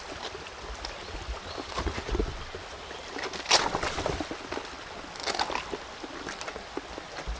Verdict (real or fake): real